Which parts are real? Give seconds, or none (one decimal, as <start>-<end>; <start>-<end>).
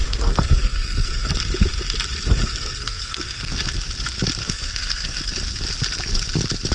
1.3-2.4; 3.5-4.4; 5.3-6.7